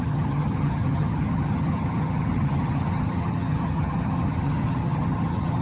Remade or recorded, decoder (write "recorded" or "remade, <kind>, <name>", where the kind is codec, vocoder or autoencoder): remade, vocoder, HiFi-GAN